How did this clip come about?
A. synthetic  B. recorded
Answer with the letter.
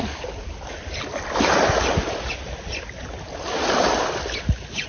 B